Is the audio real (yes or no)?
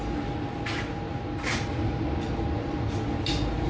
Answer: yes